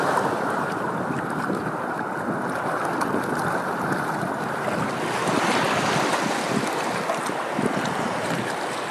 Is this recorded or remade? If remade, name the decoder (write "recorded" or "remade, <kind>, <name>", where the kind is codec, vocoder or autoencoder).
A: recorded